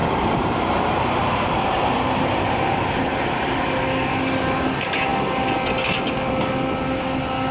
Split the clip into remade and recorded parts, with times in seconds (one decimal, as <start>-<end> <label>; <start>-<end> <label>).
0.0-3.8 remade; 3.8-7.5 recorded